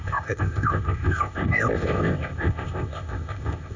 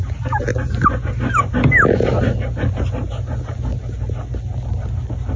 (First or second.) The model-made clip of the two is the first